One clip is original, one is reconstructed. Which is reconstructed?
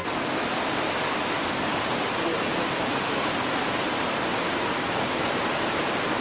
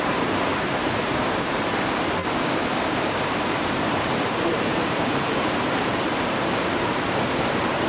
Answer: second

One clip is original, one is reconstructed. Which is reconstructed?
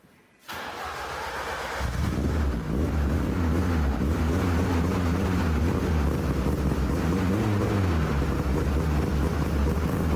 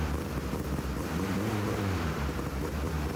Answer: second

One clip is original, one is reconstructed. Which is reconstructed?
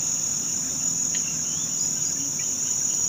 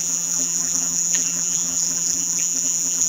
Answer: second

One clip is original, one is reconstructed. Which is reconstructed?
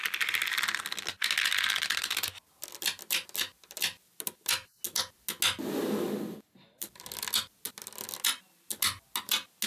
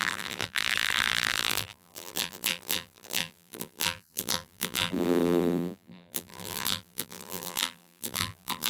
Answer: second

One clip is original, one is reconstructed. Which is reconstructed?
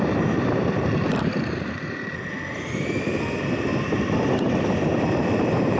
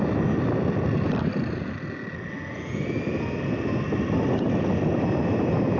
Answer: first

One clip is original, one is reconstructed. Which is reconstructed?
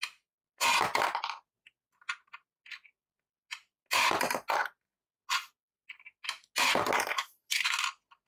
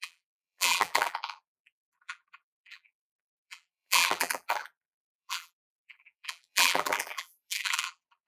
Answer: second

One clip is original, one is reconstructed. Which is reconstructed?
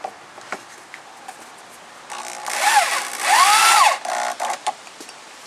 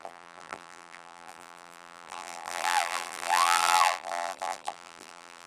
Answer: second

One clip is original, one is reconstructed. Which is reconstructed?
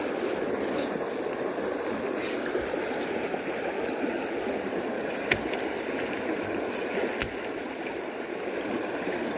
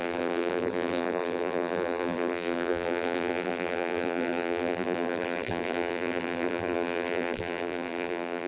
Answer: second